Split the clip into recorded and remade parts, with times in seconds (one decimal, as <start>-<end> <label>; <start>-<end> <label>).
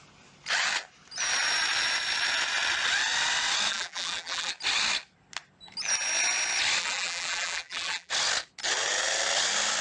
0.0-3.7 recorded; 3.7-4.5 remade; 4.5-6.8 recorded; 6.8-8.1 remade; 8.1-9.8 recorded